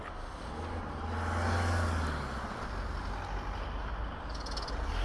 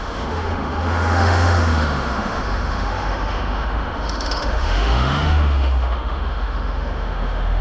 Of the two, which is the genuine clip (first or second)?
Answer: first